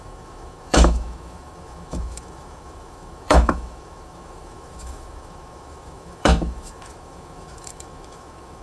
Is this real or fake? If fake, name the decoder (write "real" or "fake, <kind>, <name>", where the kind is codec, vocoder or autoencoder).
fake, autoencoder, DAC-VAE